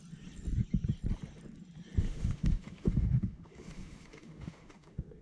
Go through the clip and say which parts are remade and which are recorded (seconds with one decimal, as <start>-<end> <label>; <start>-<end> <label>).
0.0-2.0 recorded; 2.0-5.2 remade

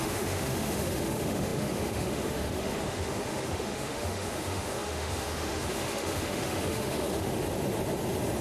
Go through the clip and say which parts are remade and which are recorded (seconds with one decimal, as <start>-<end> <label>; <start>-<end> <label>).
0.0-7.3 remade; 7.3-8.4 recorded

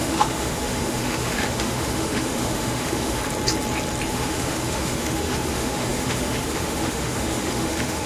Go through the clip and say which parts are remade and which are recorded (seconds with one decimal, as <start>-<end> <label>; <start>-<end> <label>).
0.0-3.2 remade; 3.2-4.1 recorded; 4.1-8.1 remade

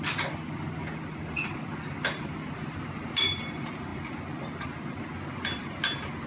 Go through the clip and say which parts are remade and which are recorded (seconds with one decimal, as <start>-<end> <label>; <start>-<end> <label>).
0.0-6.3 recorded

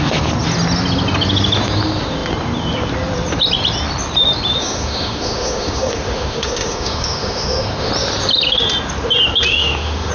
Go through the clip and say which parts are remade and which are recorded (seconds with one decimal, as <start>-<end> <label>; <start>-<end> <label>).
0.0-4.6 recorded; 4.6-7.9 remade; 7.9-9.5 recorded; 9.5-10.1 remade

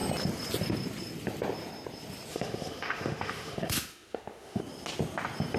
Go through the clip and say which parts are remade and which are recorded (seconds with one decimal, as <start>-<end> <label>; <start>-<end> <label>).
0.0-2.3 recorded; 2.3-4.6 remade; 4.6-5.6 recorded